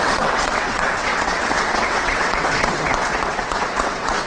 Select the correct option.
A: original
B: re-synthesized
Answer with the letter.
B